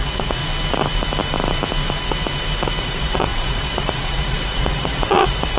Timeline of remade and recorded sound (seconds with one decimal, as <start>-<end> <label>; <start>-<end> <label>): 0.0-0.4 remade; 0.4-2.8 recorded; 2.8-5.6 remade